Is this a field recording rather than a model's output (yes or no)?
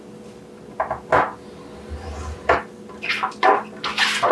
yes